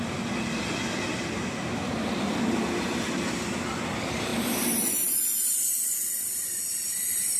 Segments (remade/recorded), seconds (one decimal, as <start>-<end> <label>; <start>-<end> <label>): 0.0-7.4 recorded